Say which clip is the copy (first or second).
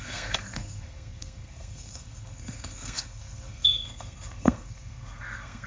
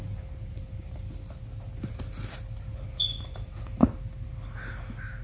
first